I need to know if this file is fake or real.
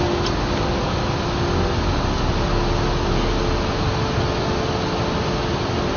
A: real